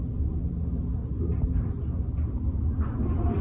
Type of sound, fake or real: real